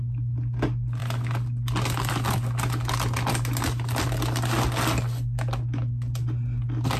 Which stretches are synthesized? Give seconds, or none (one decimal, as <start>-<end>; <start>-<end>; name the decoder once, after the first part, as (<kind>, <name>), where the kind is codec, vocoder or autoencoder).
none